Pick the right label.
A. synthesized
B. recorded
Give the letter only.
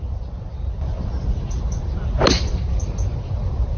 B